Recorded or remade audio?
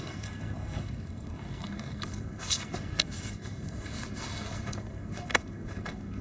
remade